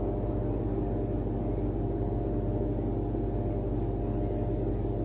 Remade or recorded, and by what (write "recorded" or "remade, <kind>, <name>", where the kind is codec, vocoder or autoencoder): recorded